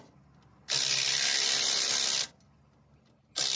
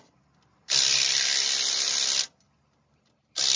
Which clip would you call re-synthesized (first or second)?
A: second